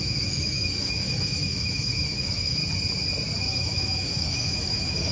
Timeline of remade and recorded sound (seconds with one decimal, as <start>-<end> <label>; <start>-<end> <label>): 0.0-2.6 remade; 2.6-3.5 recorded; 3.5-5.1 remade